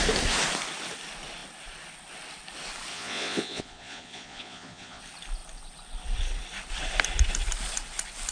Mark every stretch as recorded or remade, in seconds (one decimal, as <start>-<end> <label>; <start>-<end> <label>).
0.0-2.9 recorded; 2.9-5.0 remade; 5.0-8.3 recorded